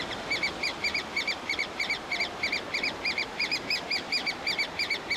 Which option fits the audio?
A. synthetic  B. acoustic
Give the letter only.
A